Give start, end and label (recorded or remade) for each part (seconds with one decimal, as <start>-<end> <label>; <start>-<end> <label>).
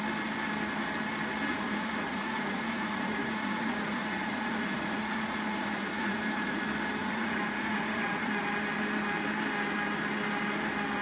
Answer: 0.0-1.5 recorded; 1.5-6.6 remade; 6.6-7.0 recorded; 7.0-8.3 remade; 8.3-11.0 recorded